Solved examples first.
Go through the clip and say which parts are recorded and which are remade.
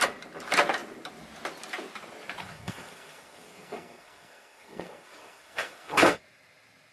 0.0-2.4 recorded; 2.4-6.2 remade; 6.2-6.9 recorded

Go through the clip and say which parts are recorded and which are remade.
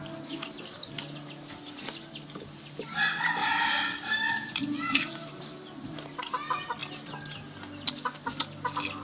0.0-3.4 recorded; 3.4-6.2 remade; 6.2-9.0 recorded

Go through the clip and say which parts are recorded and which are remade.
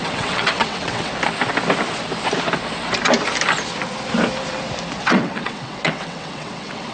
0.0-1.1 remade; 1.1-5.0 recorded; 5.0-6.9 remade